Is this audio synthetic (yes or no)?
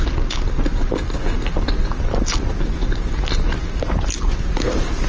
no